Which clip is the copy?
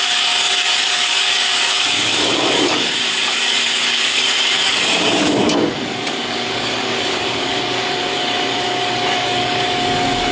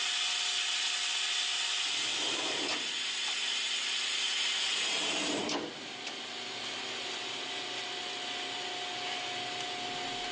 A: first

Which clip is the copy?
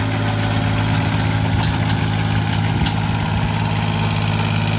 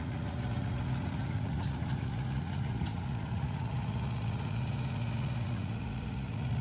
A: second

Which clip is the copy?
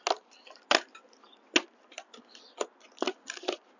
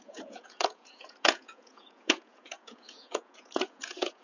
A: second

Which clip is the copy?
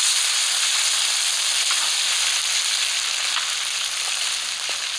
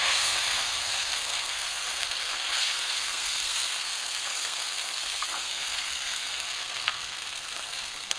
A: second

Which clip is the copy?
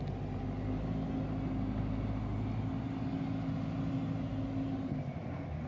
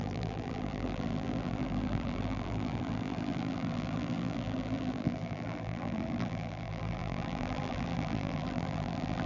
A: second